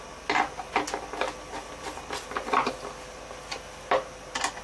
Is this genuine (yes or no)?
yes